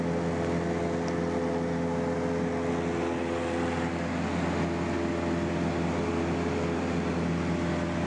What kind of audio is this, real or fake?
real